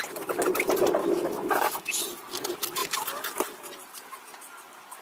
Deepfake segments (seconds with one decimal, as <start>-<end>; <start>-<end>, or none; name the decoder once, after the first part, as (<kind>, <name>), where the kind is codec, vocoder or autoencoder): 1.0-2.0 (autoencoder, DAC-VAE)

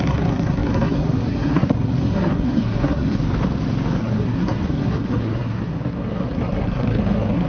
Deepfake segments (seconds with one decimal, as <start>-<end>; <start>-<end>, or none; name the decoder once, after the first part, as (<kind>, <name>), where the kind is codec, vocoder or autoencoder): 0.0-3.2 (codec, SNAC); 4.0-7.5